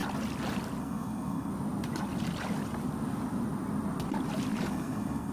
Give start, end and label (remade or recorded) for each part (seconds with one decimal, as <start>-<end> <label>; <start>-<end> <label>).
0.0-0.8 recorded; 0.8-1.5 remade; 1.5-4.7 recorded; 4.7-5.3 remade